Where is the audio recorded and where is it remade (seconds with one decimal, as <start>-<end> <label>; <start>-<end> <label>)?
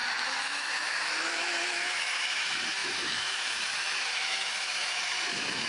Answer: 0.0-5.7 remade